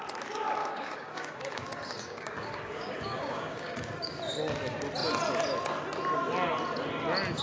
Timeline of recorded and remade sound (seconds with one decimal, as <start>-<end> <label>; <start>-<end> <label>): 0.0-0.6 recorded; 0.6-4.2 remade; 4.2-7.4 recorded